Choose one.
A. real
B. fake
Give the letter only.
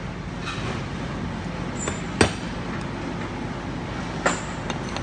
A